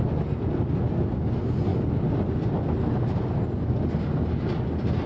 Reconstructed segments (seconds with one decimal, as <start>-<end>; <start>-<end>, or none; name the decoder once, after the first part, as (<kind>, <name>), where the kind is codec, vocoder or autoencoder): none